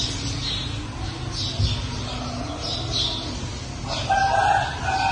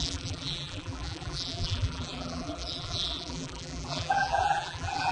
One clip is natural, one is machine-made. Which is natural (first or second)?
first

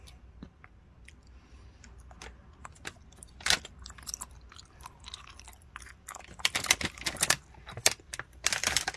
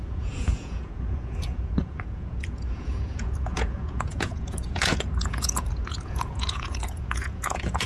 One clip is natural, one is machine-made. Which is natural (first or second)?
first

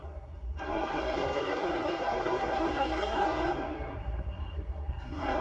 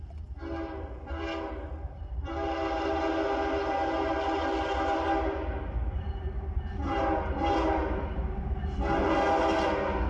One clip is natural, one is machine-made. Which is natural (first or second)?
second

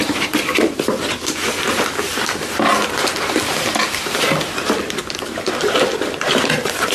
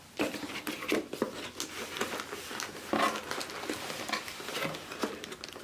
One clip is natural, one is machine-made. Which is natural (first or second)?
second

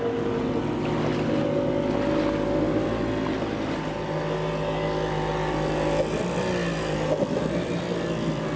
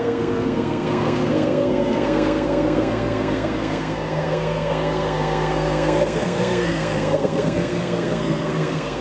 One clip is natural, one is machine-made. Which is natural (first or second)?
first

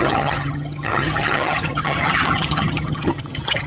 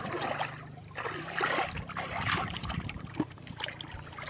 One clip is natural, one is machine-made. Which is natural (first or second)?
second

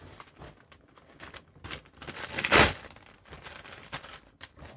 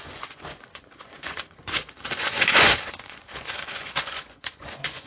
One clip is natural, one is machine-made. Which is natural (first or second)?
first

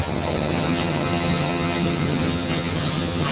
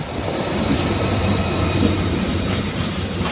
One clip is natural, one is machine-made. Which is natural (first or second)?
second